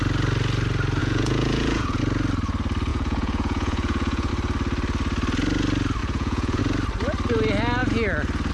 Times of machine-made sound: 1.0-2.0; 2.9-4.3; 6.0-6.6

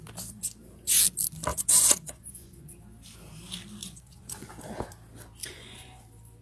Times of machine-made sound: 1.5-2.7; 3.8-4.5; 5.4-6.0

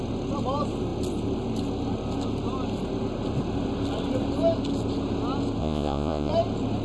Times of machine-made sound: 5.6-6.3

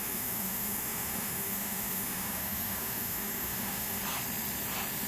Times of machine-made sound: 0.0-4.0